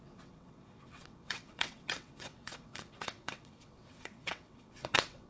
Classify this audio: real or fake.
fake